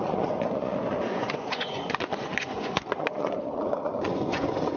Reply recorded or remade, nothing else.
remade